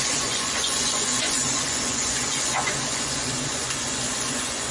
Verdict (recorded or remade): remade